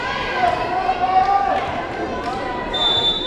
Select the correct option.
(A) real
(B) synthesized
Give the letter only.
B